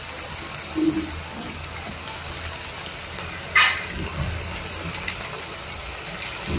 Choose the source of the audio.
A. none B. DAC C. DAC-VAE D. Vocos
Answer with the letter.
A